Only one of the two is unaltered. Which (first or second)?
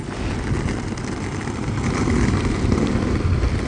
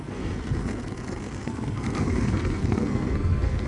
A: first